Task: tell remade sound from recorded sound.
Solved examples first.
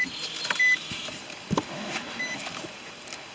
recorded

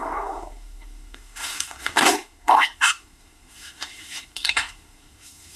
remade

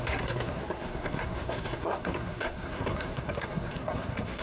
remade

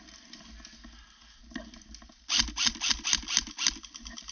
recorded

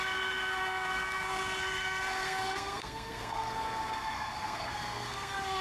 remade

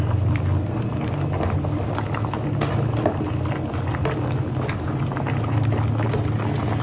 recorded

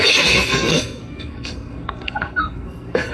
remade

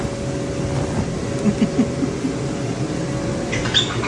recorded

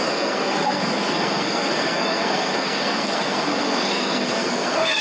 remade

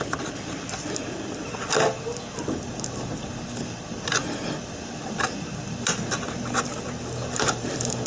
recorded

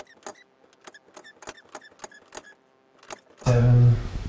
recorded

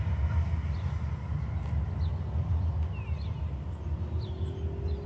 recorded